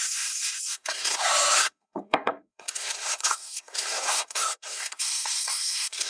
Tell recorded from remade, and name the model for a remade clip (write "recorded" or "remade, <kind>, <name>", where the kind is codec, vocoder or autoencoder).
remade, codec, SNAC